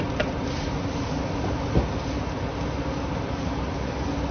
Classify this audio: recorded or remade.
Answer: recorded